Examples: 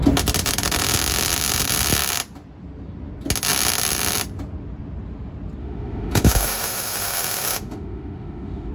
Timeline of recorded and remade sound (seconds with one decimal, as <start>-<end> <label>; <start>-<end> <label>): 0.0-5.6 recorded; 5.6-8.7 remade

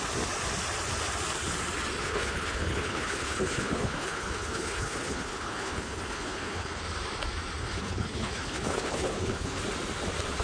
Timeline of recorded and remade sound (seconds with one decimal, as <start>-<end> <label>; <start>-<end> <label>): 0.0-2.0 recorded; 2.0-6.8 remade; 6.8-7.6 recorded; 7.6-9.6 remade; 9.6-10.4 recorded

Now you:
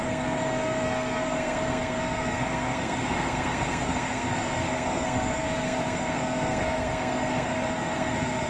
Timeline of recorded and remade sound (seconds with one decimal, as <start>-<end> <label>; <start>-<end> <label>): 0.0-8.5 remade

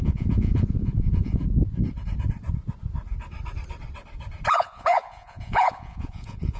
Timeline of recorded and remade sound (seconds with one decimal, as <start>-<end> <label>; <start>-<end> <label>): 0.0-1.4 remade; 1.4-4.5 recorded; 4.5-6.6 remade

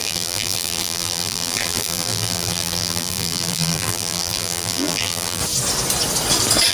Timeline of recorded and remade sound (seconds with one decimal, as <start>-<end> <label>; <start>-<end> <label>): 0.0-5.4 remade; 5.4-6.7 recorded

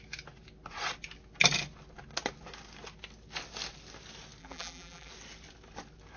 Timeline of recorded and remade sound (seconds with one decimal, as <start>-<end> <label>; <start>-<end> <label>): 0.0-4.4 recorded; 4.4-5.1 remade; 5.1-6.2 recorded

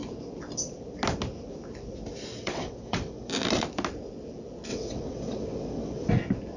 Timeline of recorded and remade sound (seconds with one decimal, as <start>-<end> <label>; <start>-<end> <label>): 0.0-2.3 recorded; 2.3-3.3 remade; 3.3-4.7 recorded; 4.7-6.1 remade; 6.1-6.6 recorded